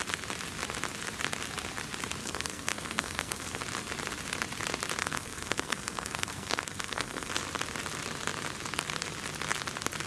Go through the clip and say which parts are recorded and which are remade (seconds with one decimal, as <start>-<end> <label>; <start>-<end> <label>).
0.0-2.2 recorded; 2.2-3.6 remade; 3.6-5.0 recorded; 5.0-7.3 remade; 7.3-10.1 recorded